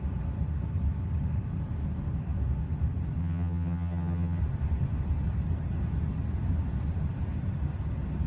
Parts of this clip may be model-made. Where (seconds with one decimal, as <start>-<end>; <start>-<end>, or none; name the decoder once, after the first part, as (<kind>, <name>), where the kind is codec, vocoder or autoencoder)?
3.2-4.4 (vocoder, HiFi-GAN)